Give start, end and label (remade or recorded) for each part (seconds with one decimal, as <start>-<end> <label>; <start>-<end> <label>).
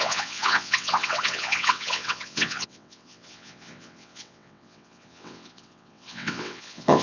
0.0-7.0 remade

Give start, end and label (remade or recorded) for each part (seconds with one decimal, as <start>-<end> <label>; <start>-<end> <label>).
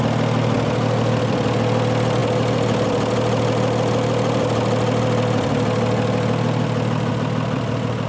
0.0-8.1 recorded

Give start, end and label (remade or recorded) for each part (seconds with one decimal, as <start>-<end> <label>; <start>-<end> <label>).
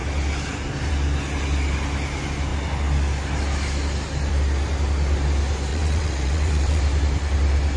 0.0-5.7 recorded; 5.7-6.8 remade; 6.8-7.8 recorded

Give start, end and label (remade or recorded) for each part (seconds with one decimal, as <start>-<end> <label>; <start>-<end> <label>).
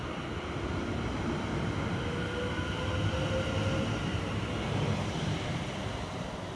0.0-6.6 recorded